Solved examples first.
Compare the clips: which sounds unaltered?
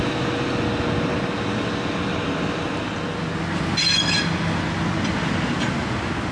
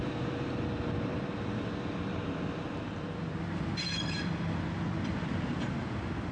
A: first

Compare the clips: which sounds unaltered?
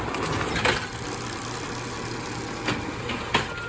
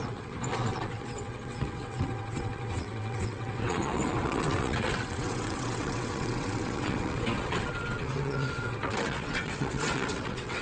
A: first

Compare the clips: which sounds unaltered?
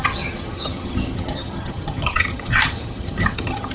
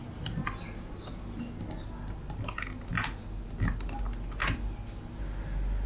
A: second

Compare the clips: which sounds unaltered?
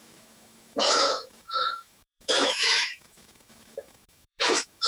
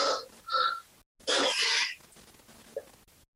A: second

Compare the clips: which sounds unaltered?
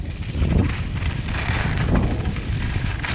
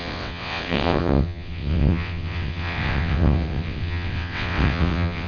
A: first